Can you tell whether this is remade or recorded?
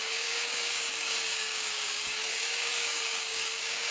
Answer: remade